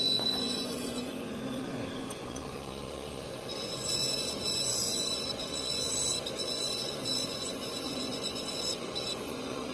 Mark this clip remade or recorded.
remade